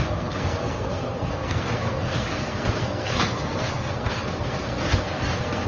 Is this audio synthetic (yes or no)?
yes